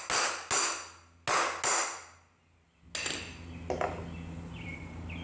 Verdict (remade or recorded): recorded